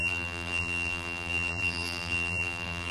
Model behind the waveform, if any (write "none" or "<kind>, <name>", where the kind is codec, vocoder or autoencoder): vocoder, BigVGAN v2